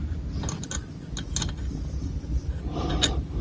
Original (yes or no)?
yes